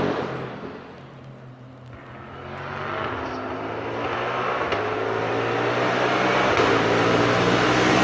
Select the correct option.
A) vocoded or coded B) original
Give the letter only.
B